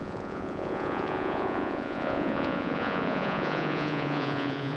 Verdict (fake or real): fake